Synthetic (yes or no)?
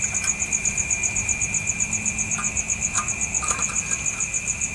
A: no